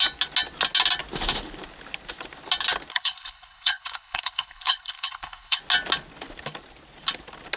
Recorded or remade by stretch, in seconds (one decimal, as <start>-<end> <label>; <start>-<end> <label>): 0.0-2.9 recorded; 2.9-5.6 remade; 5.6-7.6 recorded